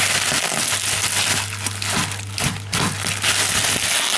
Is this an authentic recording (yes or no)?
yes